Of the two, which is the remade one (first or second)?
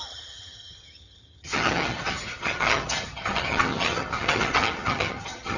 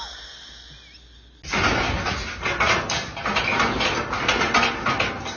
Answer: first